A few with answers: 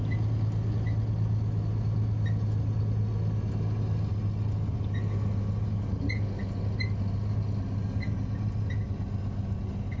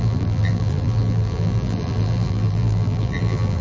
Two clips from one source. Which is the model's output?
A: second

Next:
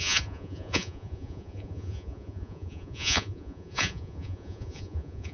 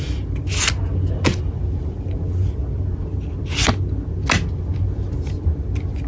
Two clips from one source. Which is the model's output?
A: first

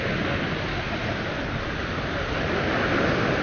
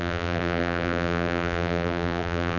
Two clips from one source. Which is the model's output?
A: second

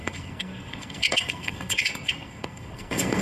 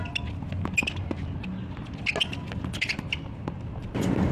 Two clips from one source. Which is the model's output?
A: first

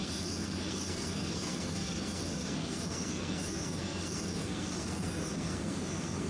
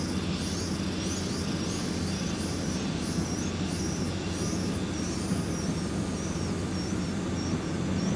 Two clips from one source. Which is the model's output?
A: first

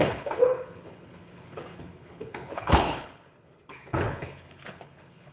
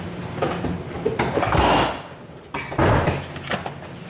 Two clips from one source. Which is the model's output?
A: first